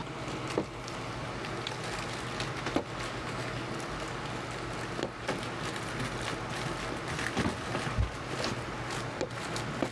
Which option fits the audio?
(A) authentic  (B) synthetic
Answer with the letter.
A